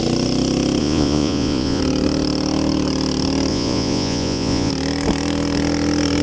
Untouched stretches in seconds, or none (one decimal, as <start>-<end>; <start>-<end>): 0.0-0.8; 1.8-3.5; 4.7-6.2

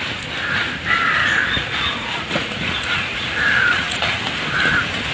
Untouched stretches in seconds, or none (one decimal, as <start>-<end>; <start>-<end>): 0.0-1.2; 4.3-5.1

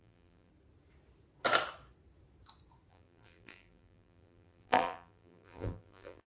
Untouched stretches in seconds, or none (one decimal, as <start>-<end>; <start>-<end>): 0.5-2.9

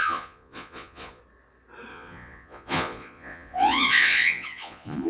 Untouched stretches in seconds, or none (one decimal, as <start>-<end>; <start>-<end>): 1.2-1.9

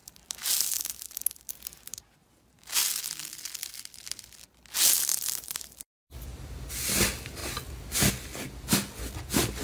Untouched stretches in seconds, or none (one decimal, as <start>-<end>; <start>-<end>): 0.0-2.2; 2.8-5.1; 6.1-9.6

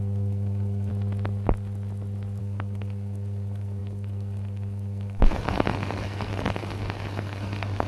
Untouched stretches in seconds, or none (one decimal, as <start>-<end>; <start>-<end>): 0.9-2.4

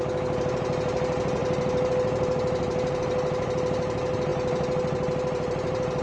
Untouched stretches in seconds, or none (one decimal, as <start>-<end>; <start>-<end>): none